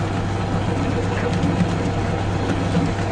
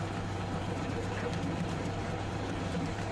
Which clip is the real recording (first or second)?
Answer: first